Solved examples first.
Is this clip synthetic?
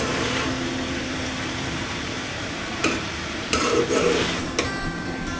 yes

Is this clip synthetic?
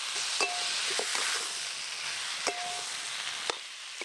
no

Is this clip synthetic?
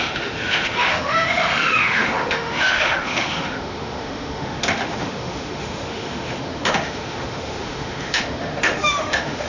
yes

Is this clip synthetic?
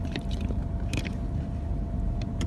yes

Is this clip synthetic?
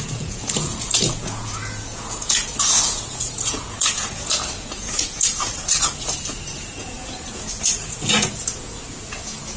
yes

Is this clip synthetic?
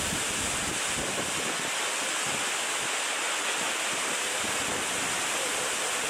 no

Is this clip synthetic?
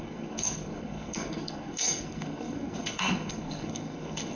yes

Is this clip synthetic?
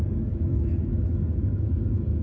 yes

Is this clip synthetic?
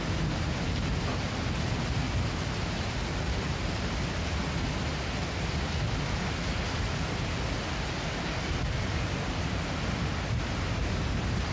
no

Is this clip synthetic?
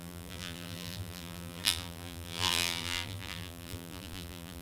yes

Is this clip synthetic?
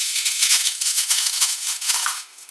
yes